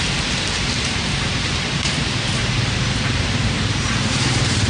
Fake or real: fake